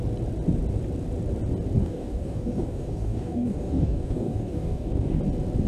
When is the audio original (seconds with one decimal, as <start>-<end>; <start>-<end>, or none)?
0.0-1.8; 5.2-5.7